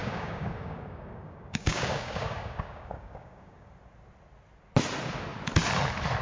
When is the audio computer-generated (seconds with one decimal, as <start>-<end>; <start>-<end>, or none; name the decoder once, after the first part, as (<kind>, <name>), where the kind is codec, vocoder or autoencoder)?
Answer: 0.0-3.7 (codec, DAC)